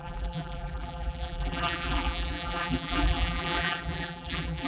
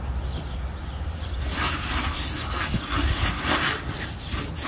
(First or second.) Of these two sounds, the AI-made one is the first